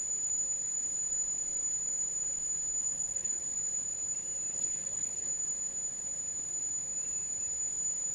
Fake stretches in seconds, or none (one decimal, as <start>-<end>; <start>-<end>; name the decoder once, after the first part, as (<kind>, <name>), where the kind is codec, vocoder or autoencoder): 2.8-3.4 (codec, HILCodec); 4.5-5.3